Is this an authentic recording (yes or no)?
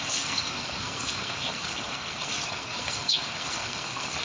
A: no